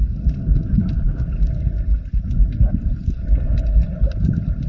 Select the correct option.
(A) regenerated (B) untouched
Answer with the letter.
B